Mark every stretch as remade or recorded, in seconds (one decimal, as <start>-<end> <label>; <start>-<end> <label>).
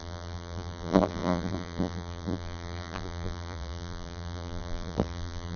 0.0-5.6 remade